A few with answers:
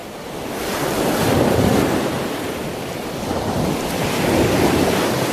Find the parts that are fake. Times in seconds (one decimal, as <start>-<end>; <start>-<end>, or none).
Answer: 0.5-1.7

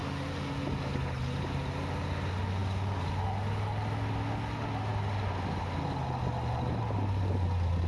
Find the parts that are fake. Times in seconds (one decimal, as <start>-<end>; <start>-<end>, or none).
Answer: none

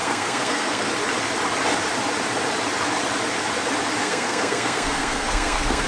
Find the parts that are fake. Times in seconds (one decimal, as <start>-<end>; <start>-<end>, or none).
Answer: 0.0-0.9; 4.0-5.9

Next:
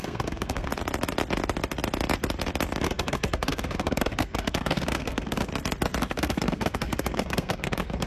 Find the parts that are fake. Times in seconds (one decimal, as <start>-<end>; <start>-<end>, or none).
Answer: 0.0-0.7; 2.8-5.5; 6.0-8.1

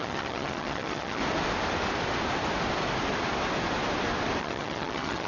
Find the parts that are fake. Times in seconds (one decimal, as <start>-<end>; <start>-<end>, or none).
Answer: 0.0-1.2; 4.4-5.3

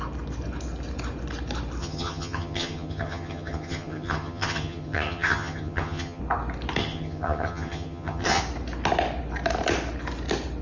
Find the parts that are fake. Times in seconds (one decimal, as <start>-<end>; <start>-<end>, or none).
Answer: 1.8-6.2; 6.8-8.4

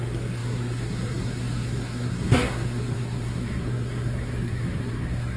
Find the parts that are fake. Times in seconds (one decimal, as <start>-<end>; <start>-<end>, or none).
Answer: 0.0-5.4

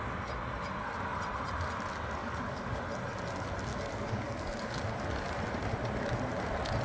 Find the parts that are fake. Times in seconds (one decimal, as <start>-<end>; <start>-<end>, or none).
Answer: 2.2-2.8; 3.7-4.8